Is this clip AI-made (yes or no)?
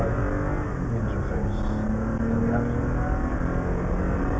no